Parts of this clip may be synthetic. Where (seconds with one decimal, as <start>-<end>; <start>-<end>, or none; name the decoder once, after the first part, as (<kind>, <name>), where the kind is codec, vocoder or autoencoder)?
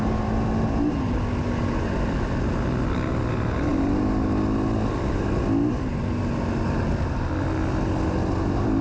none